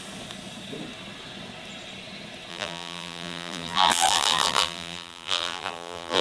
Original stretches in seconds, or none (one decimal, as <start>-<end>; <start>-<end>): 0.0-2.5